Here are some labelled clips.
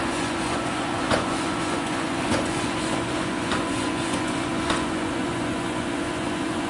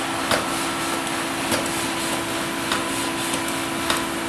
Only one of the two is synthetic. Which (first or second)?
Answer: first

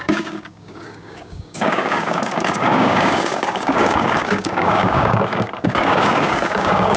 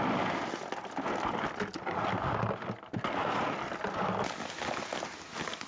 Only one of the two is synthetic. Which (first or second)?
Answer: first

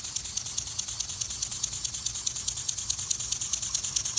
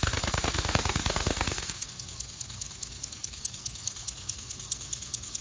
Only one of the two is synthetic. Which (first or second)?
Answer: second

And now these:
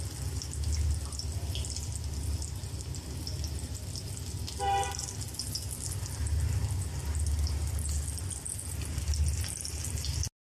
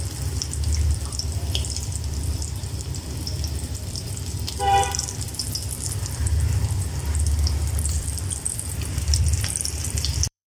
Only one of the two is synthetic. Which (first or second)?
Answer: second